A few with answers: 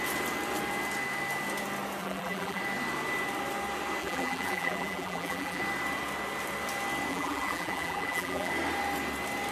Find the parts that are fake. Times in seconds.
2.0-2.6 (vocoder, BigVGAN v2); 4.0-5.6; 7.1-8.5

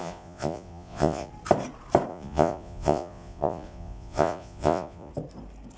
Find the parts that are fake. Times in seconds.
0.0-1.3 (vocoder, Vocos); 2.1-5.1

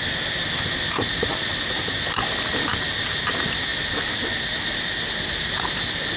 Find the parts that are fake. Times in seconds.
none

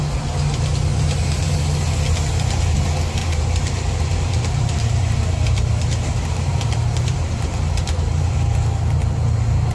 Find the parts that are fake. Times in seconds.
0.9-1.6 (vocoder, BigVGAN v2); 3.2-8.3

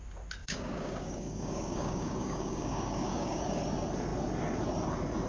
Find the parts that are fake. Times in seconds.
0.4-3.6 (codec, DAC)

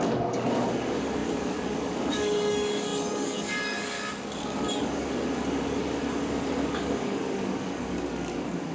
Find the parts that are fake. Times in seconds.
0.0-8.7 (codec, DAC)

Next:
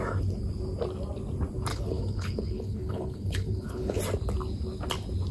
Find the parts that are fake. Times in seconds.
1.7-4.0 (codec, HILCodec)

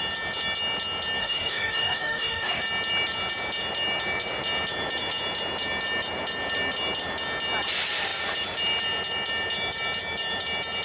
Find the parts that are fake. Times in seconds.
1.2-2.6 (autoencoder, DAC-VAE)